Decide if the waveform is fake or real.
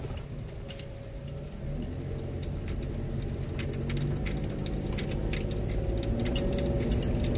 real